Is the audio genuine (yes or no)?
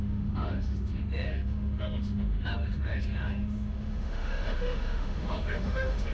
no